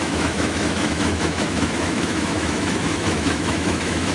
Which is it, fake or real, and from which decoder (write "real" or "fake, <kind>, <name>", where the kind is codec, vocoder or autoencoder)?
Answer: fake, autoencoder, DAC-VAE